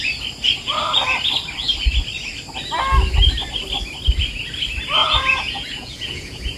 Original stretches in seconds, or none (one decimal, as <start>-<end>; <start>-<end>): 0.0-5.0